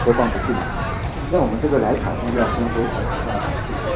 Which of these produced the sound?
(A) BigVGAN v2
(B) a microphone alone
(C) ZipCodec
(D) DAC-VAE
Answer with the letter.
A